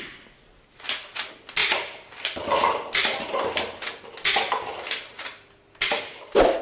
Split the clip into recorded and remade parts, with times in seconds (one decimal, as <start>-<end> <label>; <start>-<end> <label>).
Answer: 0.0-6.6 recorded